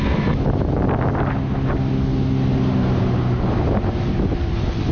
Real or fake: real